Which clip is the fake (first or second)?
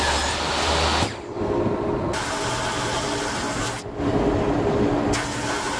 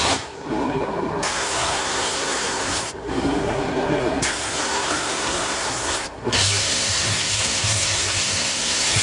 second